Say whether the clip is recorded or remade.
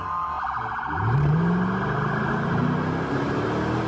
recorded